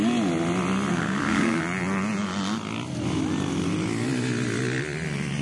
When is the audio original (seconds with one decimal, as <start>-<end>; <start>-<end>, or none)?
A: 0.0-0.9; 1.6-5.4